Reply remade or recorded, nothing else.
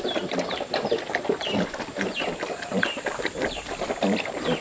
recorded